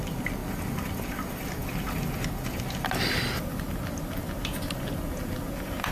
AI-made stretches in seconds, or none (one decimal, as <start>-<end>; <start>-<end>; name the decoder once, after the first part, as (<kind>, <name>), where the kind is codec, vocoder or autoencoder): none